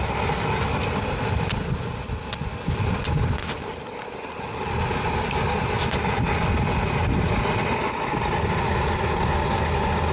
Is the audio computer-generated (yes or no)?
no